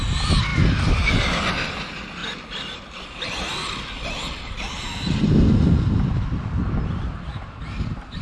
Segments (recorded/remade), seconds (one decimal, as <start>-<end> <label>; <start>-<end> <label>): 0.0-0.5 recorded; 0.5-1.1 remade; 1.1-7.3 recorded; 7.3-8.2 remade